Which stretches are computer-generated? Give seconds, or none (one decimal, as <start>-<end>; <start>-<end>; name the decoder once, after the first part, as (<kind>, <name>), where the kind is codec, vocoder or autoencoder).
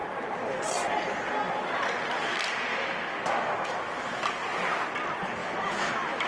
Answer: 2.7-4.1 (autoencoder, DAC-VAE); 5.4-6.3